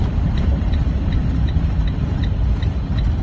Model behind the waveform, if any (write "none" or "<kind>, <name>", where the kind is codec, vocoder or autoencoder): none